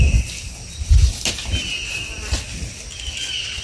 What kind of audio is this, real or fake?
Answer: real